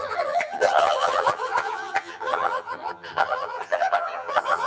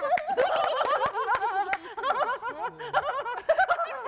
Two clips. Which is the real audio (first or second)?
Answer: second